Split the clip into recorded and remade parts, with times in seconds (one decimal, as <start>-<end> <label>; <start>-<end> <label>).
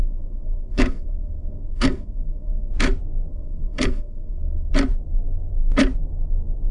0.0-2.7 remade; 2.7-3.3 recorded; 3.3-4.7 remade; 4.7-6.7 recorded